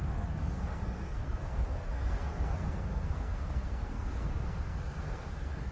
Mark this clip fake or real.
fake